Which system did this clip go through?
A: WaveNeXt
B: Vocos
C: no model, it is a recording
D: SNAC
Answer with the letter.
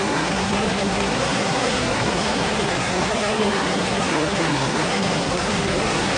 D